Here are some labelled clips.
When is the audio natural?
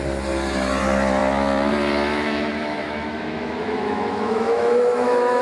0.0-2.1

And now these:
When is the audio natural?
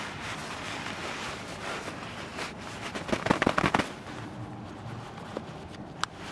0.4-1.5; 2.3-5.1